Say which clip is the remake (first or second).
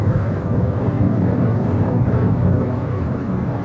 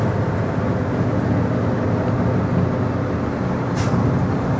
first